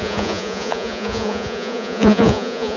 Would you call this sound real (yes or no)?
no